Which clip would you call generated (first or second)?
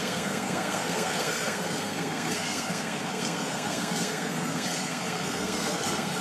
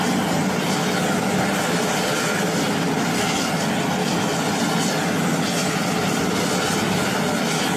first